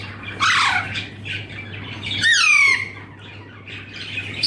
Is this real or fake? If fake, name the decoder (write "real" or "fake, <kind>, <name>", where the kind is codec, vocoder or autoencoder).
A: real